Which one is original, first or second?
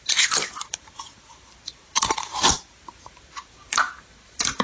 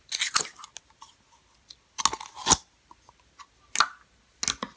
second